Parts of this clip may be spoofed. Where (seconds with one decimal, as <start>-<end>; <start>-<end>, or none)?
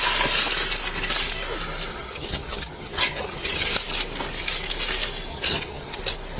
1.9-3.7; 5.3-6.0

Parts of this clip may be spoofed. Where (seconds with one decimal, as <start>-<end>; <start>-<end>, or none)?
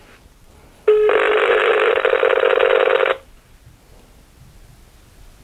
none